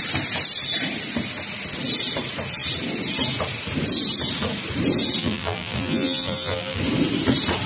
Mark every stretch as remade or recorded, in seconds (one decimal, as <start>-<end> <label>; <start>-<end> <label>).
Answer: 0.0-5.2 recorded; 5.2-6.8 remade; 6.8-7.7 recorded